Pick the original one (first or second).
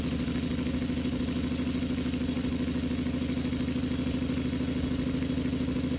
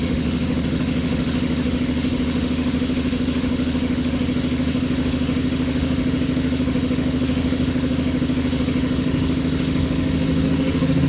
first